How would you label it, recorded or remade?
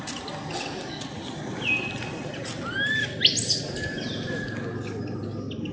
recorded